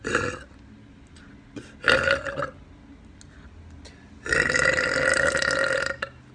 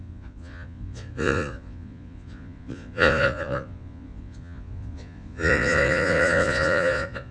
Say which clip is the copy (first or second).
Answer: second